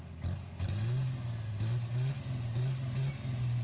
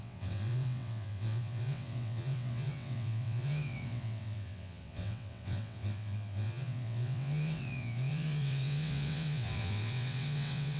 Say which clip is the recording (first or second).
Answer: first